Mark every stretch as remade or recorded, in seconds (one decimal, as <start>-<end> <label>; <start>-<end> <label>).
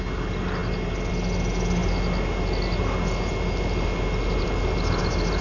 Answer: 0.0-5.4 recorded